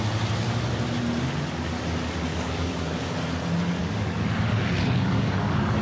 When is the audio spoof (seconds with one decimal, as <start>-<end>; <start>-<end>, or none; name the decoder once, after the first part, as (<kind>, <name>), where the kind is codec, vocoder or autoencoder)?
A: 2.3-3.1 (codec, DAC); 3.8-5.8